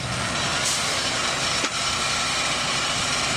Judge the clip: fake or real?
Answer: fake